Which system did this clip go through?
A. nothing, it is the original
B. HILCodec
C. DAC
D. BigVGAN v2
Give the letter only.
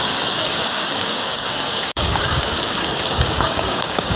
C